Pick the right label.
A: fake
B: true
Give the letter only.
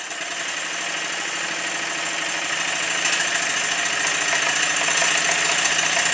B